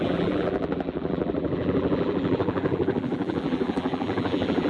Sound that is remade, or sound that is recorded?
remade